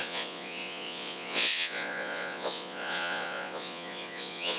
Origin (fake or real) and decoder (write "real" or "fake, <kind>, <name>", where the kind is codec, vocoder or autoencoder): fake, vocoder, Vocos